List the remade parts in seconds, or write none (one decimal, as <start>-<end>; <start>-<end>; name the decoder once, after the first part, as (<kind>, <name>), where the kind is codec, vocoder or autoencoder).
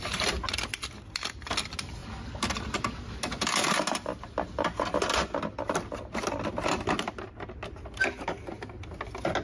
none